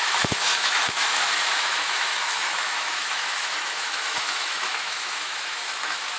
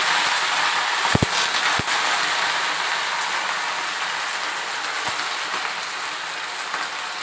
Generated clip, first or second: first